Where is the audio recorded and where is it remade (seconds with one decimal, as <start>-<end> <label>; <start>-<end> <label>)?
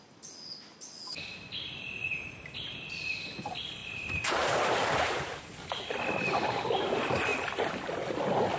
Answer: 0.0-2.0 recorded; 2.0-3.1 remade; 3.1-3.8 recorded; 3.8-5.4 remade; 5.4-8.6 recorded